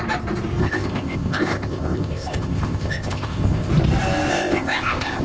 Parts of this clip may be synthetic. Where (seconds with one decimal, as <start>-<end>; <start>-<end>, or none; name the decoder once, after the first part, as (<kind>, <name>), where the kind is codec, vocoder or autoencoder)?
0.6-3.7 (codec, ZipCodec); 4.3-5.2